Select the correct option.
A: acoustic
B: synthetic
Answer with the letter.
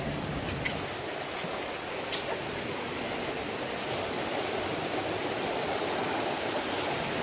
A